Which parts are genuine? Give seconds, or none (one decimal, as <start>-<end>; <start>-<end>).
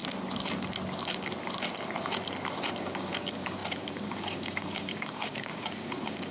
0.0-2.8